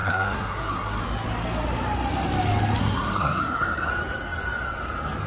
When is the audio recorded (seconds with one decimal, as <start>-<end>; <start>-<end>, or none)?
1.0-2.8; 3.9-5.3

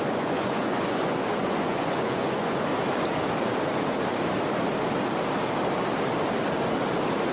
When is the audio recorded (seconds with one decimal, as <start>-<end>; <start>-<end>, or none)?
2.7-7.3

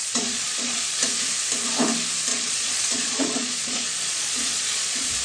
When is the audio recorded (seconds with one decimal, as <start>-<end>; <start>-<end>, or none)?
0.8-2.3

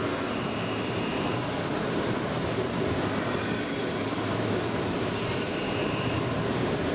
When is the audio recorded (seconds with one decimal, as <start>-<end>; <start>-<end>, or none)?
0.0-1.1; 2.5-3.8

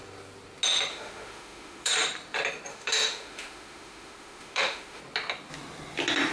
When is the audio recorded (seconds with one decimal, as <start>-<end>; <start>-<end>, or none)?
0.0-0.9; 1.9-2.7; 5.0-6.3